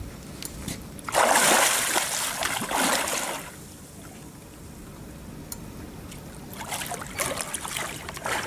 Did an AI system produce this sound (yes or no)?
no